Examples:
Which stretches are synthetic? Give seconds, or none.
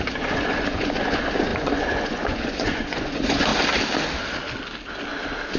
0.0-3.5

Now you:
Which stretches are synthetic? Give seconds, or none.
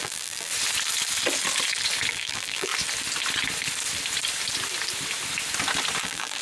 0.0-0.5; 2.1-2.7; 6.0-6.4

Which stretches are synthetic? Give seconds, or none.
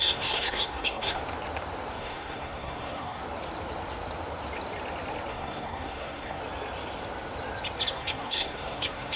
0.0-1.2; 2.0-3.2; 5.3-6.4; 7.9-9.2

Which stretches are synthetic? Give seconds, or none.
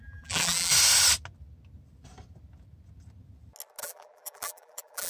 0.0-0.7; 3.8-5.1